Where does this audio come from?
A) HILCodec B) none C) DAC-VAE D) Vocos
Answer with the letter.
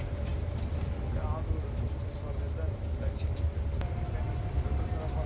B